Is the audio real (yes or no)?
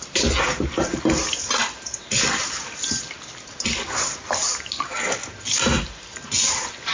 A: yes